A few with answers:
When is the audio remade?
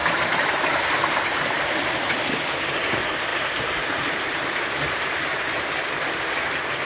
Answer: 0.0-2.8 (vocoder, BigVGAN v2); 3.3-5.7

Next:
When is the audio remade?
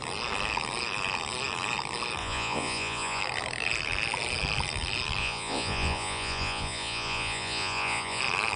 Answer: 2.2-3.2 (vocoder, Vocos); 5.2-8.2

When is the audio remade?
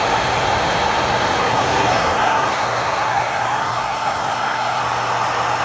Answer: 1.4-4.8 (codec, SNAC)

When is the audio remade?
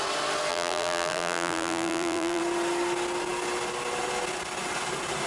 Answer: 0.5-2.4 (vocoder, BigVGAN v2)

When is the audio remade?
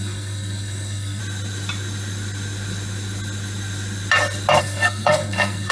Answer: 0.0-1.2 (codec, SNAC); 4.6-5.7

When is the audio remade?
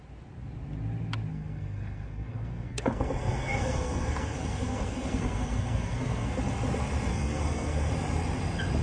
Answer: 1.3-6.4 (codec, SNAC); 7.1-7.9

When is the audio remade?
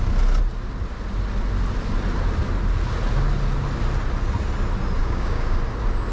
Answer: 5.0-5.6 (codec, DAC)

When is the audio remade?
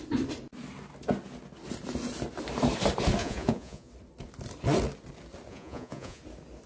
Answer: 3.2-3.9 (vocoder, Vocos); 5.5-6.2